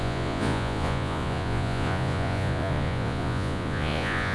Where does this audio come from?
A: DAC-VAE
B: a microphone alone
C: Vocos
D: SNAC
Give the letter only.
C